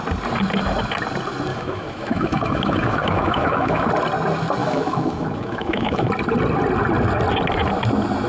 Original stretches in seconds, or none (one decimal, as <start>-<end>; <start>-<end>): 0.0-1.5; 3.9-4.6; 6.1-8.3